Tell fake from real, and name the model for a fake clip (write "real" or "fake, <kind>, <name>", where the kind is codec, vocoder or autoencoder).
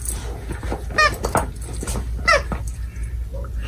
real